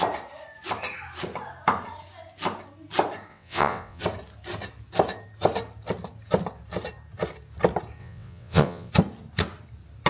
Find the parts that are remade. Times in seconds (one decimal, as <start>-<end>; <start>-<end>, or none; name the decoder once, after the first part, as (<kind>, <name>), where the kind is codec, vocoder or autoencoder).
3.3-4.0 (vocoder, WaveNeXt); 8.0-8.9